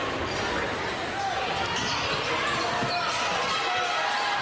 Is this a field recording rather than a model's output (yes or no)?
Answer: yes